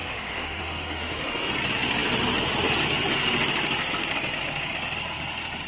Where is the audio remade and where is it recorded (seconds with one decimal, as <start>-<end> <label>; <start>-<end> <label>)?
0.0-1.5 remade; 1.5-5.7 recorded